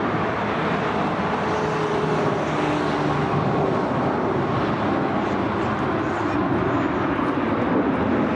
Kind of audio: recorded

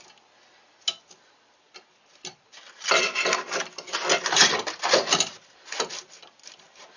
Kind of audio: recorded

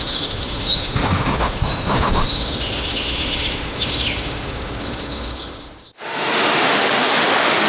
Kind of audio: remade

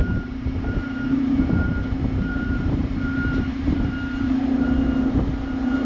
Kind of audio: remade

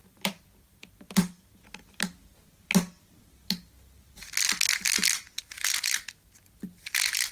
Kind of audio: recorded